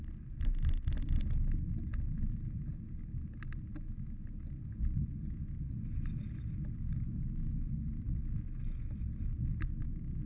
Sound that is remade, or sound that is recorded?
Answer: recorded